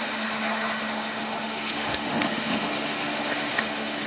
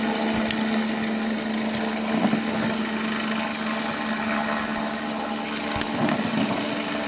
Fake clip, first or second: first